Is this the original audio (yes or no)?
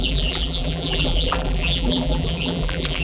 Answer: no